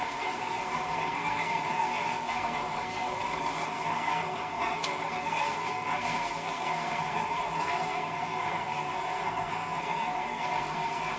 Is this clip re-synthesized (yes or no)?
yes